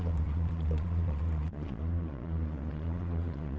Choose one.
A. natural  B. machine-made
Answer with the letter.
B